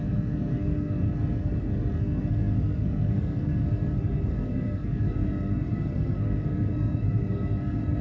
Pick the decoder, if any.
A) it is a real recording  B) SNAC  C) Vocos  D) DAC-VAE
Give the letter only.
B